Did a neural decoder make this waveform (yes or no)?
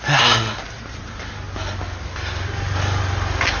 no